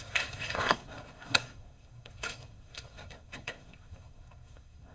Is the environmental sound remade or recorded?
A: remade